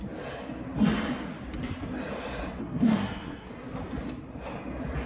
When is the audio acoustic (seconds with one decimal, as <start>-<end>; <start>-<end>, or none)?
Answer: 0.0-2.6; 3.5-5.1